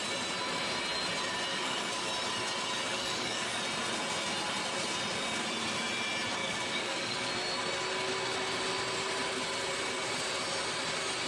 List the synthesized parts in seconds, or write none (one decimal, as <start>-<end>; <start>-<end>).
1.5-2.1; 2.9-3.6; 6.4-7.3